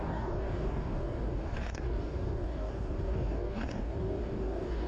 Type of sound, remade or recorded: remade